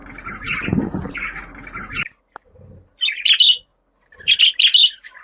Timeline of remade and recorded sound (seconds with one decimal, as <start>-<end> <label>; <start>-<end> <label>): 0.0-5.2 recorded